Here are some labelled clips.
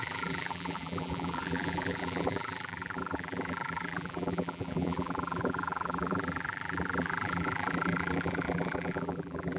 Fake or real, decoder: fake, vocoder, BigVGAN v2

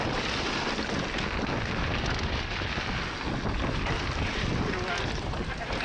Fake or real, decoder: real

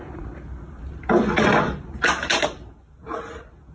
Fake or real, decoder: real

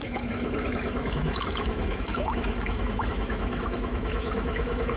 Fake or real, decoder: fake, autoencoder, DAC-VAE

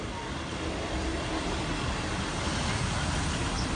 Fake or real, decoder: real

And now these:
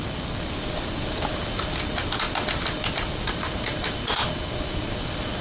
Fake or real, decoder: real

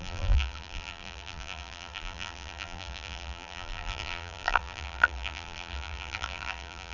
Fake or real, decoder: fake, vocoder, BigVGAN v2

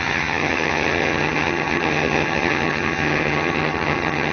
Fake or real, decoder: fake, vocoder, HiFi-GAN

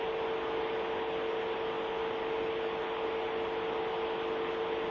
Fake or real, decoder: real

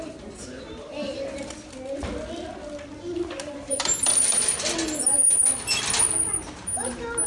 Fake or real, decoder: real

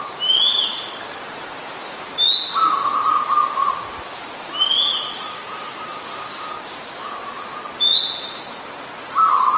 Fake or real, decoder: real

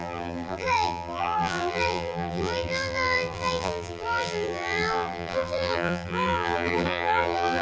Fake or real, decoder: fake, vocoder, BigVGAN v2